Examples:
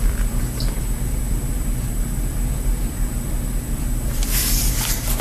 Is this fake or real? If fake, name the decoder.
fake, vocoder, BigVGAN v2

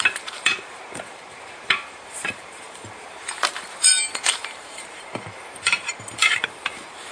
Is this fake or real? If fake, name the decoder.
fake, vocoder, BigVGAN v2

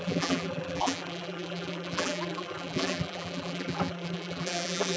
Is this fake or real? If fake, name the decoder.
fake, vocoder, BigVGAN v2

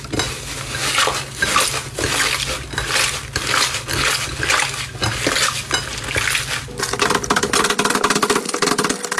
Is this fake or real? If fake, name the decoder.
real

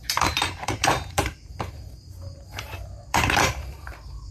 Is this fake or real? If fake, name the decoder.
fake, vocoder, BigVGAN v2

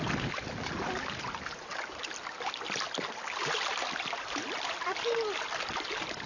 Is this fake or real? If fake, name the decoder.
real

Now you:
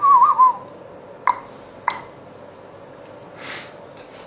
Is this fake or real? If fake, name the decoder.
real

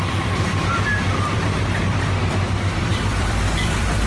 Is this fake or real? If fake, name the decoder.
fake, vocoder, BigVGAN v2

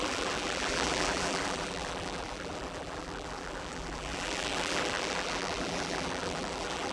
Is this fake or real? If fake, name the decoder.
fake, vocoder, BigVGAN v2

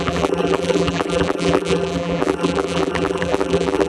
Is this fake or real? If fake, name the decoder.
fake, vocoder, BigVGAN v2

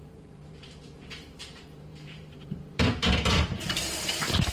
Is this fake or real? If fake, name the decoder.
fake, vocoder, BigVGAN v2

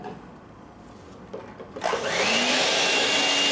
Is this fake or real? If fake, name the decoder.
real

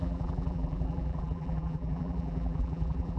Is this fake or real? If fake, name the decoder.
fake, vocoder, BigVGAN v2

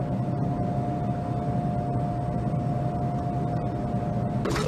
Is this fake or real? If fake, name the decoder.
real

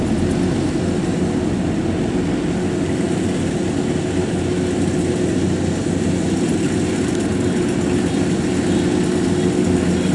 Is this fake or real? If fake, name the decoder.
real